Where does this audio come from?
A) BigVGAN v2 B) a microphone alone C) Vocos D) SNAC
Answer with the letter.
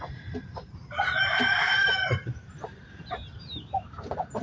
A